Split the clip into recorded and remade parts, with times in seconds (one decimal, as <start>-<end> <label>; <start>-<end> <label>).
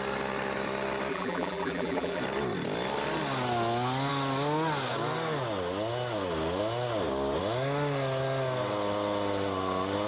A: 0.0-1.1 recorded; 1.1-2.2 remade; 2.2-10.1 recorded